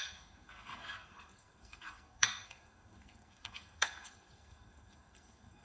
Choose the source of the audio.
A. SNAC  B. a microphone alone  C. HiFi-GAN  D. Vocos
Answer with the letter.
A